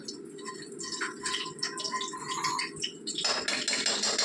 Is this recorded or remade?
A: recorded